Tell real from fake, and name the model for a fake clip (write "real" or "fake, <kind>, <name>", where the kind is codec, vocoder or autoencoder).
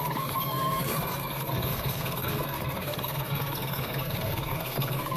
fake, codec, SNAC